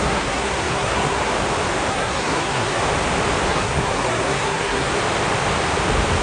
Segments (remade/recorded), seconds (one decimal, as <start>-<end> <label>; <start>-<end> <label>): 0.0-1.3 remade; 1.3-1.9 recorded; 1.9-2.8 remade; 2.8-3.5 recorded; 3.5-4.9 remade; 4.9-6.2 recorded